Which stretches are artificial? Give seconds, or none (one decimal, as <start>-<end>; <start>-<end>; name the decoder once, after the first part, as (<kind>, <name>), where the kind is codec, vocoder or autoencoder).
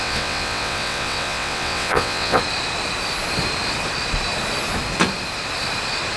0.0-2.4 (vocoder, WaveNeXt)